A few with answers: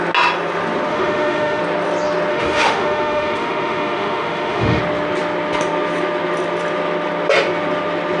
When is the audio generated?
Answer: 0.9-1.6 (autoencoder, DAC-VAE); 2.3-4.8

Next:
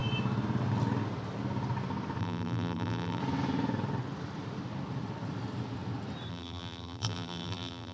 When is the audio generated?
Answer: 2.2-3.2 (vocoder, BigVGAN v2); 6.3-7.9